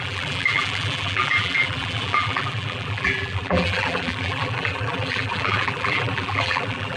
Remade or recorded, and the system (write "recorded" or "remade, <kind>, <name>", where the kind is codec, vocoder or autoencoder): remade, vocoder, BigVGAN v2